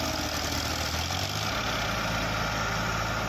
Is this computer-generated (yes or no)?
no